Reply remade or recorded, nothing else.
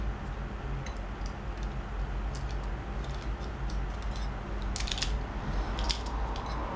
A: recorded